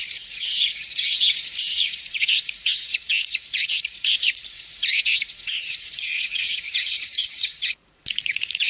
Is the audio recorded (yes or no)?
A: no